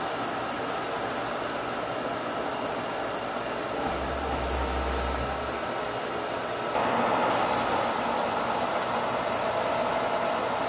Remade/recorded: recorded